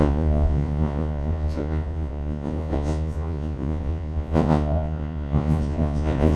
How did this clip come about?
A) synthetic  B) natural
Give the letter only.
A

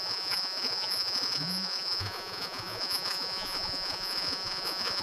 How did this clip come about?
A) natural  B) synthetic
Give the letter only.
B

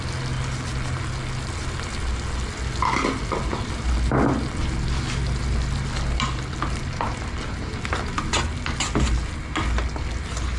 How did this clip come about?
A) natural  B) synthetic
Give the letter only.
A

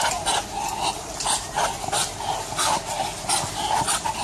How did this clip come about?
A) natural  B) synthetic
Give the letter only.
A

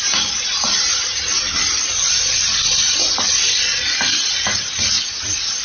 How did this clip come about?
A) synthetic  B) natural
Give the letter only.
B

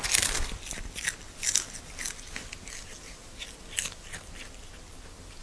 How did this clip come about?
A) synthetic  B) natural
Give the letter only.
B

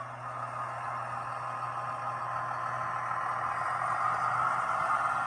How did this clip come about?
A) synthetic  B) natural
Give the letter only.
B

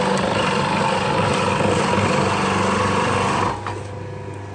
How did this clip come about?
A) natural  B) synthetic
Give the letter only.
A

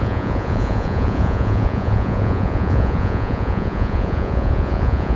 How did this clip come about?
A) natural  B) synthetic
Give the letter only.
B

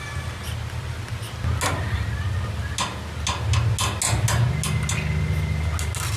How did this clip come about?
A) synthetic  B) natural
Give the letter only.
B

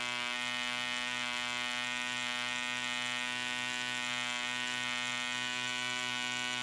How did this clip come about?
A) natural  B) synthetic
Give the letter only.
A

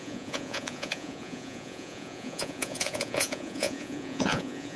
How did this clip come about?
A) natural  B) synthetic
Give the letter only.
B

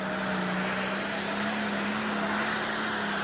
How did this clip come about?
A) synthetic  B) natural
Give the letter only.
B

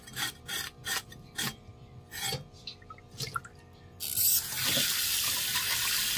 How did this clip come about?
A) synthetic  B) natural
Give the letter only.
B